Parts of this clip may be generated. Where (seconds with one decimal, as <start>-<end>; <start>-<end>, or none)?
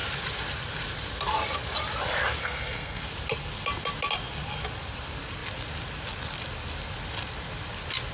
2.4-3.0